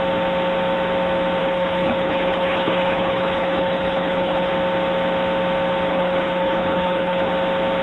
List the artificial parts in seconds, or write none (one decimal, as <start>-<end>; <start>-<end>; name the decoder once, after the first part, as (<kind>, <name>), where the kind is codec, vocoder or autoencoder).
1.4-4.5 (codec, HILCodec); 5.9-7.3